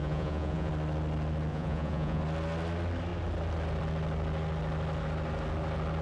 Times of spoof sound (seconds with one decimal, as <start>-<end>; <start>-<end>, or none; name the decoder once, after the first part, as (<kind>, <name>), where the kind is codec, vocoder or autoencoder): 0.0-0.7 (vocoder, Vocos); 1.5-2.2